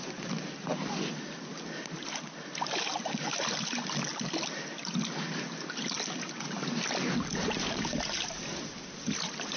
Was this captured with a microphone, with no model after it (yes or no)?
yes